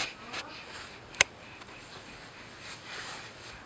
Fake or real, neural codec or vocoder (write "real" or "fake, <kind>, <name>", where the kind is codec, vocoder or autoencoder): real